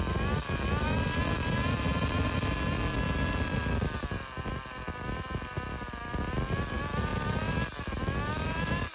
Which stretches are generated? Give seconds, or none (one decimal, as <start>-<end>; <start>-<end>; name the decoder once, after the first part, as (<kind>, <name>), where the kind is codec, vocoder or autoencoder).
none